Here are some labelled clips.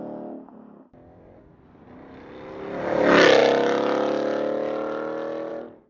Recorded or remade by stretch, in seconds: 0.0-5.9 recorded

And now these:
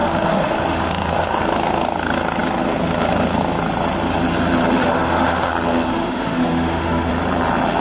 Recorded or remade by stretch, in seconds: 0.0-1.4 remade; 1.4-4.8 recorded; 4.8-5.5 remade; 5.5-5.9 recorded; 5.9-7.1 remade; 7.1-7.8 recorded